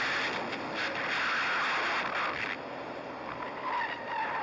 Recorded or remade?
recorded